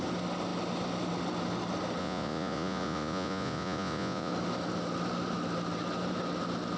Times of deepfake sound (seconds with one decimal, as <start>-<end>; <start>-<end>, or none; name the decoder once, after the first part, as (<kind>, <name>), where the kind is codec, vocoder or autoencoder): 2.0-4.3 (vocoder, Vocos)